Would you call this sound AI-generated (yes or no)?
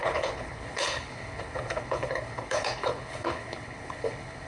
yes